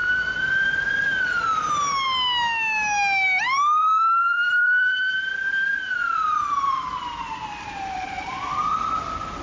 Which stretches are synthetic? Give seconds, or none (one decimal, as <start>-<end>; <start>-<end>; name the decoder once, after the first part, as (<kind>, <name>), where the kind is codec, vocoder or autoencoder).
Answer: 0.0-1.4 (vocoder, BigVGAN v2); 3.8-8.6